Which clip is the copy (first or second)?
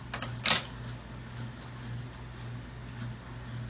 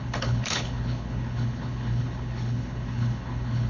second